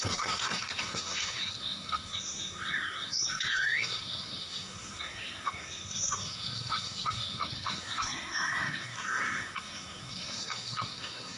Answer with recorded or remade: remade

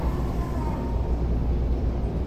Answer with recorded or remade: recorded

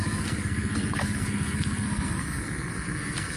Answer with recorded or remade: remade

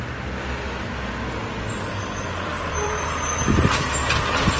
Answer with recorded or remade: recorded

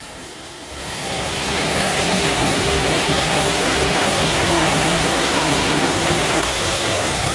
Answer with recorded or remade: remade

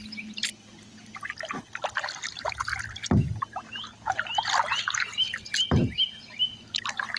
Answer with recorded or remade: recorded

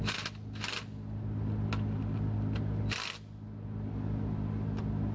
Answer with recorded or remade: recorded